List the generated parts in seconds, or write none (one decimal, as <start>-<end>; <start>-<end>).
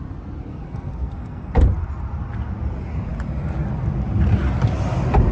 0.5-1.5